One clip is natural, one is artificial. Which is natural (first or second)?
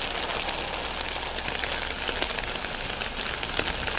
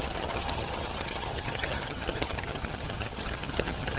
first